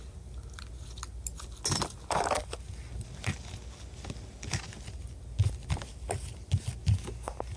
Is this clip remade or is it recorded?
recorded